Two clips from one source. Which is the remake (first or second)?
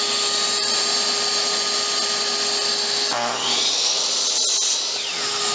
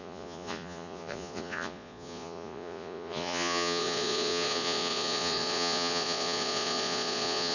second